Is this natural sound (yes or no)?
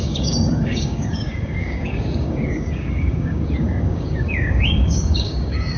no